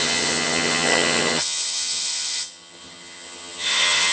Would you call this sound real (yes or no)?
no